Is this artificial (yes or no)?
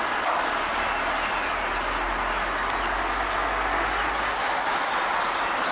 no